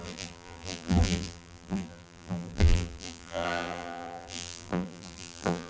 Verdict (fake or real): fake